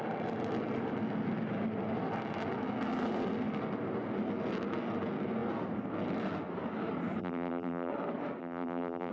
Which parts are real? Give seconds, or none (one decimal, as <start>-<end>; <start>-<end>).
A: 0.0-7.2; 7.9-8.4